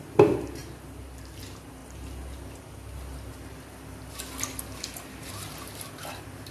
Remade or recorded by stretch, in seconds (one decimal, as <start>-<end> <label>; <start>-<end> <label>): 0.0-6.5 recorded